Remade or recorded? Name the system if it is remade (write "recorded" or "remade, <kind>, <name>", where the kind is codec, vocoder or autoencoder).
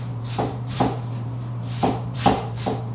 remade, vocoder, BigVGAN v2